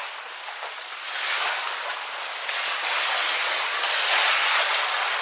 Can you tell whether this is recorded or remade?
recorded